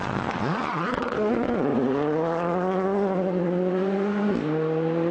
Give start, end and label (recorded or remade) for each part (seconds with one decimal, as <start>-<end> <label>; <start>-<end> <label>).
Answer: 0.0-1.7 remade; 1.7-5.1 recorded